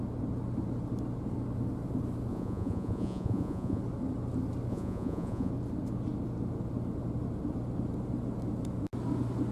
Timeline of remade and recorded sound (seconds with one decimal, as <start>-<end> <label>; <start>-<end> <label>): 0.0-2.3 recorded; 2.3-3.8 remade; 3.8-4.7 recorded; 4.7-5.5 remade; 5.5-9.5 recorded